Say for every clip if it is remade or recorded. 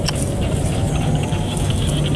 recorded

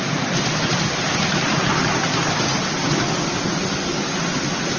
recorded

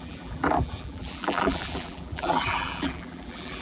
remade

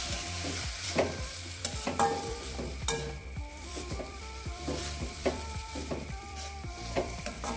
remade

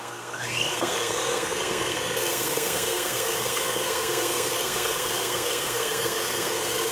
remade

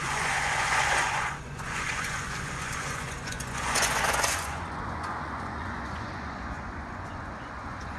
remade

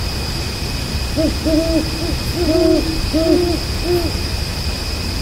recorded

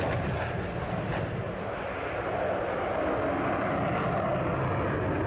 recorded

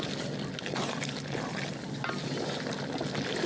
recorded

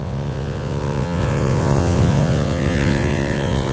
remade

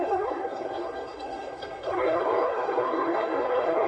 remade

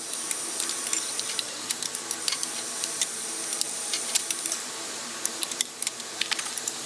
remade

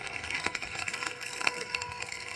remade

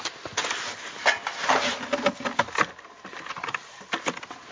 recorded